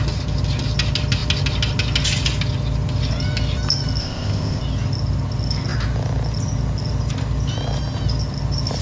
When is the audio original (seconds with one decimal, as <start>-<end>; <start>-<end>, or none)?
0.0-4.0; 4.6-8.8